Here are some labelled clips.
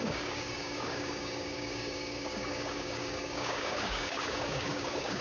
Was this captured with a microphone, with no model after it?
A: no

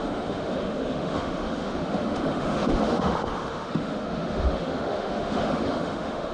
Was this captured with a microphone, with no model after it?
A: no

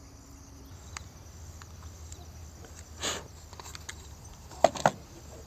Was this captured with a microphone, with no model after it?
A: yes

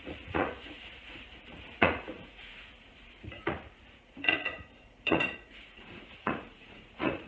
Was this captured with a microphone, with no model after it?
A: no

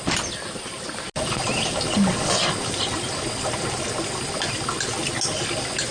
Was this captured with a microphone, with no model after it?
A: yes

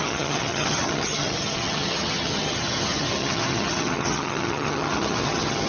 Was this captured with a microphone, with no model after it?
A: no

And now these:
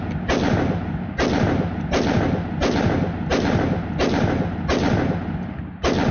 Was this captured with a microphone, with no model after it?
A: yes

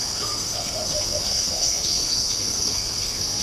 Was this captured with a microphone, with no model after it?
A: no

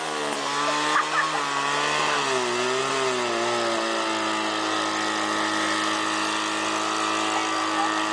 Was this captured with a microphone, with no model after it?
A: yes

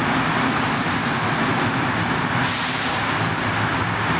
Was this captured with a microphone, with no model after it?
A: yes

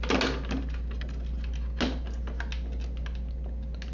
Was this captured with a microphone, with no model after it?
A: yes